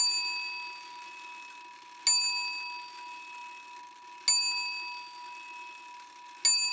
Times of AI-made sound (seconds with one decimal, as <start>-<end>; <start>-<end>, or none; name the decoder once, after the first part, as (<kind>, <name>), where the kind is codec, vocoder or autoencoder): none